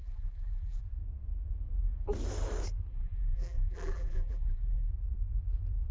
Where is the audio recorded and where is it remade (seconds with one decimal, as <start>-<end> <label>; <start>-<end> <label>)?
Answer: 0.0-0.8 remade; 0.8-2.9 recorded; 2.9-4.9 remade; 4.9-5.9 recorded